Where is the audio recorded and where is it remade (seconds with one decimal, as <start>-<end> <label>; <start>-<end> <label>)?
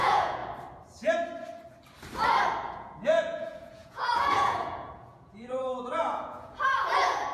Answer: 0.0-0.4 remade; 0.4-2.7 recorded; 2.7-7.3 remade